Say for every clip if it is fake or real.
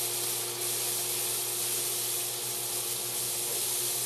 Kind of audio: real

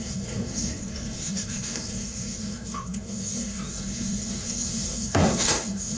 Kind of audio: fake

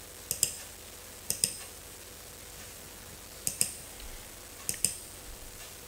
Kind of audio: real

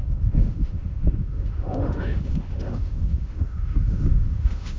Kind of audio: fake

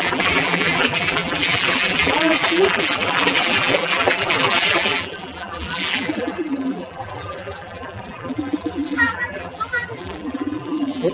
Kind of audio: fake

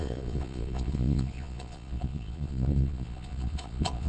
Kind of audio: fake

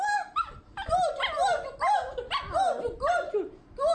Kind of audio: real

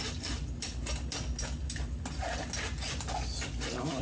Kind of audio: real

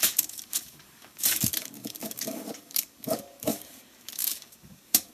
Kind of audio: fake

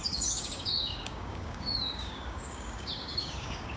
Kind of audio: fake